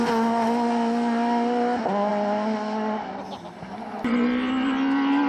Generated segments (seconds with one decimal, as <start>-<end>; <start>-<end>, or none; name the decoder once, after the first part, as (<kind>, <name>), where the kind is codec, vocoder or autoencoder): none